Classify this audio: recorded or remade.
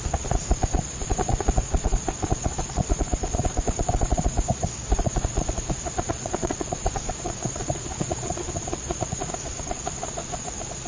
remade